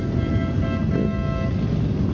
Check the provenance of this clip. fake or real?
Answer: real